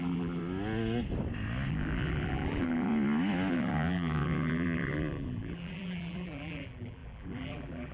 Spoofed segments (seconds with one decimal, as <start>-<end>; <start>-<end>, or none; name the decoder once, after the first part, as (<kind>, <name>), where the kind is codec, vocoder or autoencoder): 0.0-0.4 (vocoder, BigVGAN v2); 1.7-2.9; 3.5-7.9

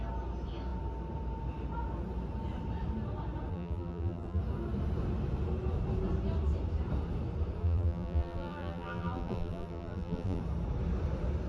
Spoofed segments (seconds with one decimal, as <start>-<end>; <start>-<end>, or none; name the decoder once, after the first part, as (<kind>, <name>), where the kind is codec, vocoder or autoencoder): 3.5-4.4 (vocoder, BigVGAN v2); 7.6-10.4